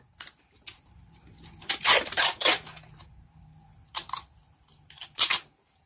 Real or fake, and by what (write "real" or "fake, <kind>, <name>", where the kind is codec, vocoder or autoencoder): real